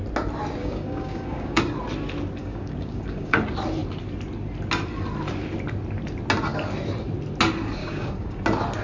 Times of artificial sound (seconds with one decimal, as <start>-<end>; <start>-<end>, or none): 0.6-1.6; 2.4-3.4; 7.8-8.4